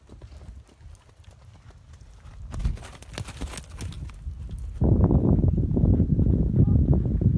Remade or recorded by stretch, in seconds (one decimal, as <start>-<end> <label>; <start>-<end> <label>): 0.0-7.4 recorded